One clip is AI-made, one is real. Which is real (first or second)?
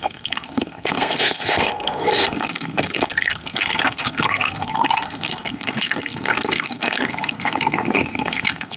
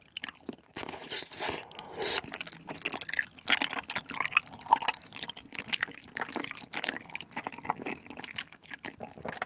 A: second